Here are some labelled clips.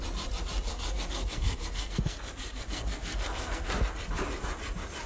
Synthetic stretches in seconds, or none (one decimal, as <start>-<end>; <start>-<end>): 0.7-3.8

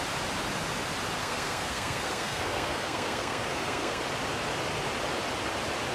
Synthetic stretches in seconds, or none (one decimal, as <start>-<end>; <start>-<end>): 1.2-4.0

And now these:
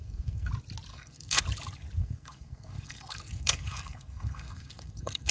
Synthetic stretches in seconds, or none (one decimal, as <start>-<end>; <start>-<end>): 0.0-0.5; 0.9-1.4; 2.0-5.3

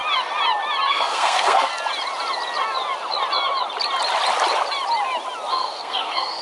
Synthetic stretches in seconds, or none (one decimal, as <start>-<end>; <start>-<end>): 0.9-1.7; 5.5-6.4

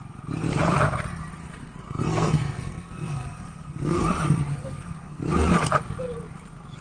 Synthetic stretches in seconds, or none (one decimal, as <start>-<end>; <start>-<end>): 1.4-4.0; 4.5-5.2

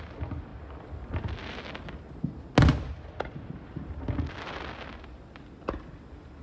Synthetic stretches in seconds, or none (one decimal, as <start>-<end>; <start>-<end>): none

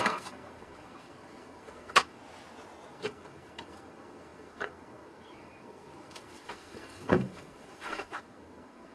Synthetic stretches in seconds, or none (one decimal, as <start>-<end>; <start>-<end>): 0.0-2.2; 2.9-8.9

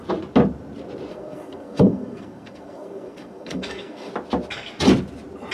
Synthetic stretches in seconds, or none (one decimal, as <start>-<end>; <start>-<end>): 1.1-4.1